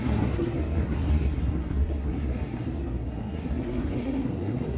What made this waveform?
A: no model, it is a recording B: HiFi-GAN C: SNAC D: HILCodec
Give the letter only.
C